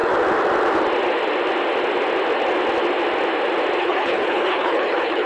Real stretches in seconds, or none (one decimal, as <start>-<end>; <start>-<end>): 0.0-3.8

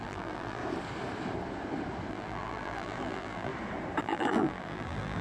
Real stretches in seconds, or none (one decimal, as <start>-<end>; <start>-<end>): 0.6-2.1; 3.5-4.0

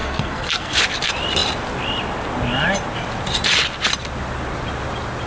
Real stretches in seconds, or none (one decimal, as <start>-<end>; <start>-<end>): 0.8-5.3

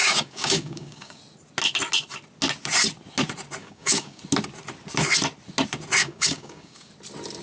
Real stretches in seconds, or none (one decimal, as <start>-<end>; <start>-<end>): 1.2-3.6; 4.2-6.0; 6.9-7.4

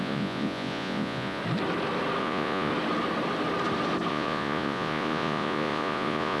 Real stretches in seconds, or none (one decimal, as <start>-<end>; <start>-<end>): 1.4-2.2; 2.7-4.1